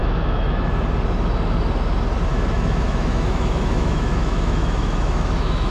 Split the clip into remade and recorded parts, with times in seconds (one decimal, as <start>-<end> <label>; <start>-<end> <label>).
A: 0.0-0.7 remade; 0.7-2.3 recorded; 2.3-5.7 remade

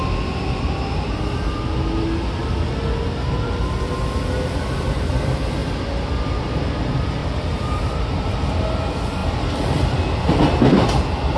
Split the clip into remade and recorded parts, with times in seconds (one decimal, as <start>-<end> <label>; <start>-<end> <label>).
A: 0.0-7.2 recorded; 7.2-8.3 remade; 8.3-11.4 recorded

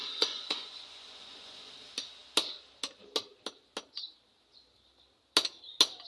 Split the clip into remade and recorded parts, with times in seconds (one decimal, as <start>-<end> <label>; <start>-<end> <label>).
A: 0.0-1.7 remade; 1.7-6.1 recorded

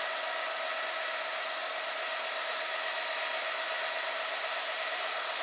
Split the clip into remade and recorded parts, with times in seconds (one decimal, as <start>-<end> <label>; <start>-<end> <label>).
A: 0.0-5.4 recorded

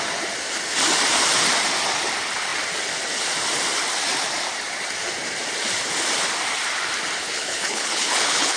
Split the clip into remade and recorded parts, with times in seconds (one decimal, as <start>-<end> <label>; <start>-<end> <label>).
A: 0.0-7.2 recorded; 7.2-8.6 remade

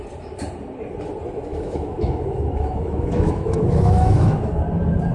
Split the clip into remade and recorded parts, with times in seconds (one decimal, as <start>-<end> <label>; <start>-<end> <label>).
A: 0.0-1.5 recorded; 1.5-4.6 remade; 4.6-5.1 recorded

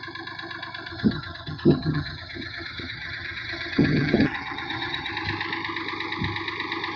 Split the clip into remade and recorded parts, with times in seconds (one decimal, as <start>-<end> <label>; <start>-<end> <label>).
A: 0.0-0.9 recorded; 0.9-5.1 remade; 5.1-7.0 recorded